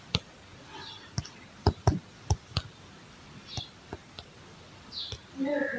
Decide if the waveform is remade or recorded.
recorded